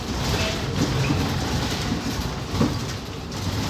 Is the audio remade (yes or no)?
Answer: no